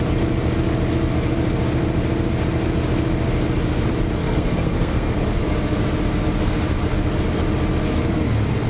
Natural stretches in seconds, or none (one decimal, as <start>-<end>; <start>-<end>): 0.0-4.2; 5.2-8.7